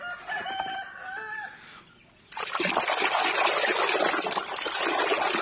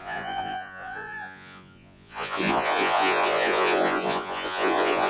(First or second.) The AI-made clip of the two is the second